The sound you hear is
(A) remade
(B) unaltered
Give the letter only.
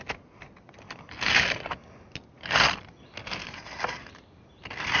B